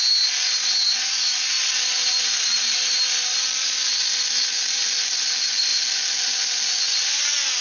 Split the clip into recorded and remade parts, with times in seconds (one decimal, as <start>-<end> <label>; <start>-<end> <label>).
0.0-7.6 recorded